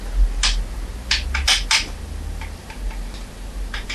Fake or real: real